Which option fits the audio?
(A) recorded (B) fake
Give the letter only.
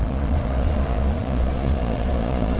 B